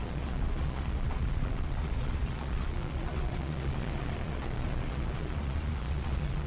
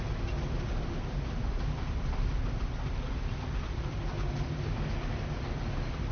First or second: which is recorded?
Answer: second